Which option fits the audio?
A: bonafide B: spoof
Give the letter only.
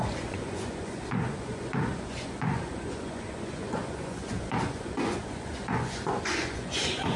B